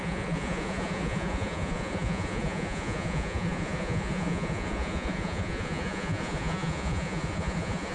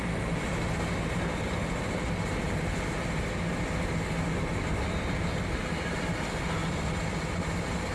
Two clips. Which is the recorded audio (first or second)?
second